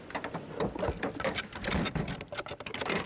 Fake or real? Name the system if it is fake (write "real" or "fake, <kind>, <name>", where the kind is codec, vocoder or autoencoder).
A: real